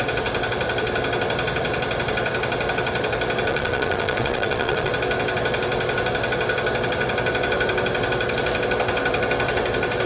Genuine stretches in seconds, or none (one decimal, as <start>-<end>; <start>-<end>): 0.0-3.5; 4.9-10.1